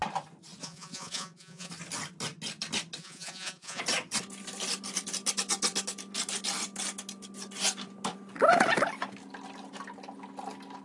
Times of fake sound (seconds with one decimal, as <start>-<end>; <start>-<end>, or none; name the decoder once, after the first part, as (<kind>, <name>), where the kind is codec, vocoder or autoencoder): 0.6-1.7 (vocoder, Vocos); 3.0-3.8